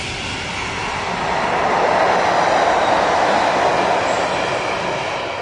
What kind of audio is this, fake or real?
real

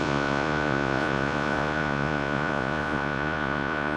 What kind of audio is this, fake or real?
fake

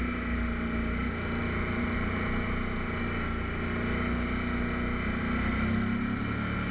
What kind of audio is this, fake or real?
real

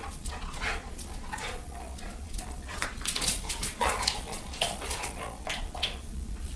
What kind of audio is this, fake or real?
fake